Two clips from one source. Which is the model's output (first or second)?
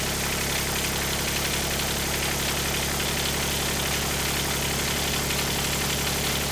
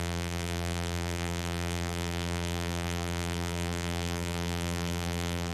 second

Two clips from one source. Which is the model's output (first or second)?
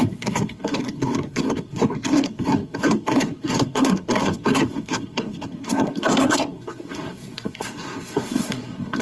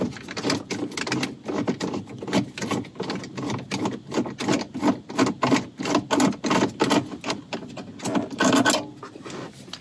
first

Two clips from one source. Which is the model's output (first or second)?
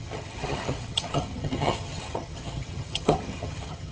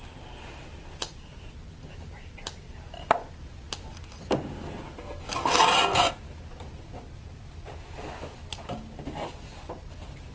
first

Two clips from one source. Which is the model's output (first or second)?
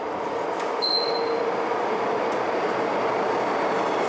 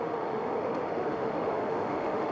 second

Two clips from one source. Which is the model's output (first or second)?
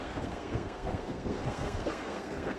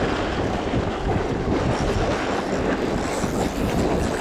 first